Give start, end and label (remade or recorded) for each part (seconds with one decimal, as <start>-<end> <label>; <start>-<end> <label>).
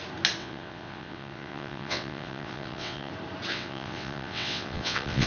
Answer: 0.0-0.4 recorded; 0.4-3.1 remade; 3.1-3.5 recorded; 3.5-5.3 remade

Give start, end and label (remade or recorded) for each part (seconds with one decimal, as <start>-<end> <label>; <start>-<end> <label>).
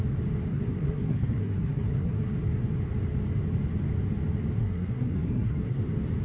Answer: 0.0-0.5 recorded; 0.5-2.3 remade; 2.3-4.6 recorded; 4.6-5.8 remade; 5.8-6.2 recorded